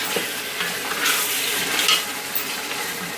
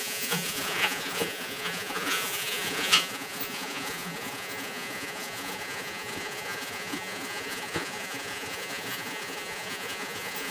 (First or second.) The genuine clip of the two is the first